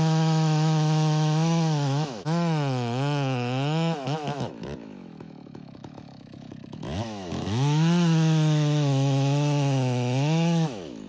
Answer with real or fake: fake